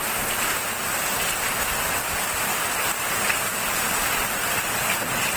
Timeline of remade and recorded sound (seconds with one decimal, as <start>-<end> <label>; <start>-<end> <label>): 0.0-5.4 recorded